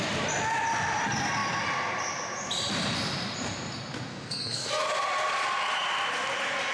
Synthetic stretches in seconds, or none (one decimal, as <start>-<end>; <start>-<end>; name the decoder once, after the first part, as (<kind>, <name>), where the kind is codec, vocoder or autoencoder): 4.1-4.8 (codec, SNAC)